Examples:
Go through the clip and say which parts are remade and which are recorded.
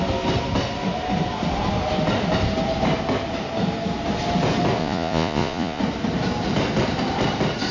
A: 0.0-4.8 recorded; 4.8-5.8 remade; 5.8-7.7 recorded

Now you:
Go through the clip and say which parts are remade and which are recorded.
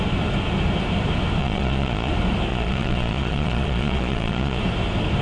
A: 0.0-1.4 recorded; 1.4-2.1 remade; 2.1-2.5 recorded; 2.5-4.6 remade; 4.6-5.2 recorded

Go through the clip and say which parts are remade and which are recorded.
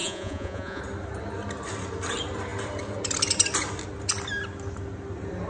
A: 0.0-0.8 remade; 0.8-5.5 recorded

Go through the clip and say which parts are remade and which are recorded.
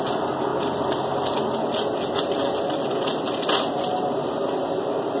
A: 0.0-5.2 recorded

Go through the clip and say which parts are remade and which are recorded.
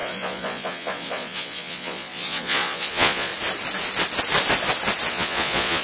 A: 0.0-3.3 remade; 3.3-5.1 recorded; 5.1-5.8 remade